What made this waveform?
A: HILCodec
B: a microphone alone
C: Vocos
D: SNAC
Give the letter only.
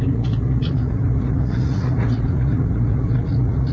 C